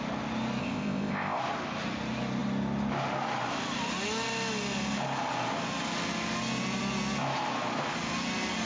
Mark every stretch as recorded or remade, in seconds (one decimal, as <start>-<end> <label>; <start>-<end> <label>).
0.0-0.6 recorded; 0.6-1.4 remade; 1.4-8.7 recorded